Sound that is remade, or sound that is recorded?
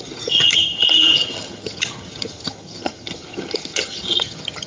remade